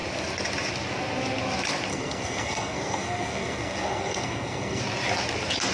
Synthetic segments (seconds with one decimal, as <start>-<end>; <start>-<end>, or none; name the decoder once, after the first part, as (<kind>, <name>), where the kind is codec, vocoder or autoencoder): 1.9-4.8 (codec, SNAC)